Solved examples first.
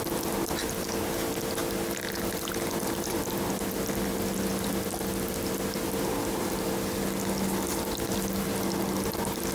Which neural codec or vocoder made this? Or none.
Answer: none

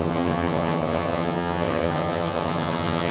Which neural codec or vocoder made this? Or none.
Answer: vocoder, HiFi-GAN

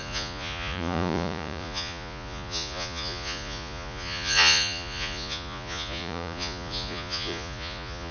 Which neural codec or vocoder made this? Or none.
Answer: vocoder, Vocos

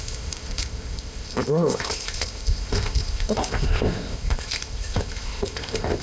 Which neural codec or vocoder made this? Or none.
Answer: codec, ZipCodec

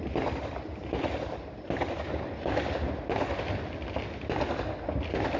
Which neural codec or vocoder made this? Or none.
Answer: none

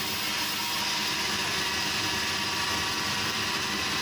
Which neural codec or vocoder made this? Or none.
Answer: none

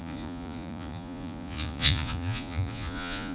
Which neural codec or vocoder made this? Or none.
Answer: vocoder, Vocos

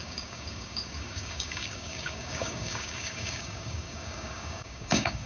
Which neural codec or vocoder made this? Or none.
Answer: codec, DAC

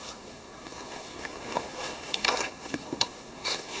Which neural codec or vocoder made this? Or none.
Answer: codec, SNAC